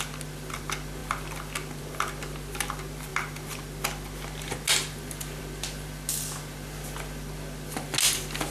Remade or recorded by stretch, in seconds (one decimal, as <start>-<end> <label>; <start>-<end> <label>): 0.0-8.5 recorded